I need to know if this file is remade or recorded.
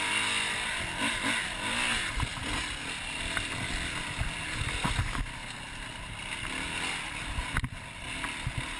recorded